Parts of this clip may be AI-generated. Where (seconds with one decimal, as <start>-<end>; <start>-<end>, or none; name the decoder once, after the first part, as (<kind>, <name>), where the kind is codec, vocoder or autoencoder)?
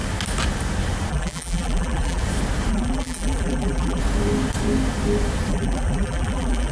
1.1-2.2 (vocoder, BigVGAN v2); 2.7-4.0; 5.5-6.7